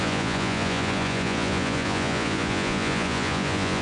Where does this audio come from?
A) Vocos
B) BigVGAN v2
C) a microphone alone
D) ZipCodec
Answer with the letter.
A